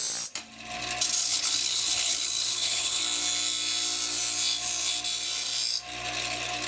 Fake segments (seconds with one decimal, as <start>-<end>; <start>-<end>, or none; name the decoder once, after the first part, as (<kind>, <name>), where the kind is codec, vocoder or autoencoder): 1.2-3.0 (codec, HILCodec)